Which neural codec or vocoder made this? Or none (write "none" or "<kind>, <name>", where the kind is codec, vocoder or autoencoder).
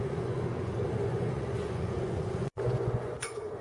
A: vocoder, Vocos